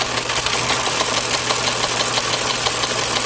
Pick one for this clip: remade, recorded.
recorded